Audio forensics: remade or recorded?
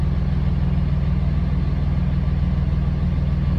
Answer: recorded